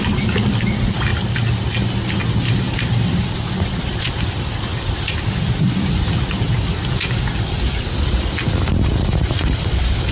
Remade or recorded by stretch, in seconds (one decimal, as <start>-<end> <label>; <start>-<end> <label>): 0.0-1.1 remade; 1.1-2.3 recorded; 2.3-10.1 remade